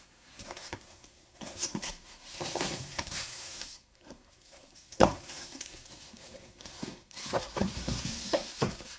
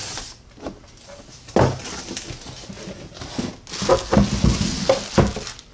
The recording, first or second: second